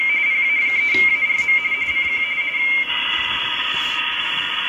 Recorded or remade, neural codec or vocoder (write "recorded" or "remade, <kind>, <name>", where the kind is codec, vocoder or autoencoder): recorded